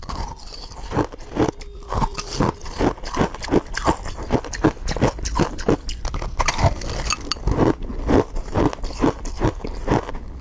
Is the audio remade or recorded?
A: recorded